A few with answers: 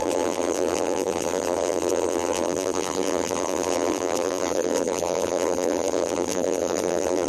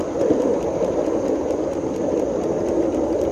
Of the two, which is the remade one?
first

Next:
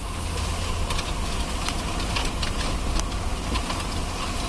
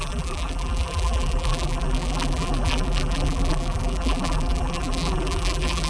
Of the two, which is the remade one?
second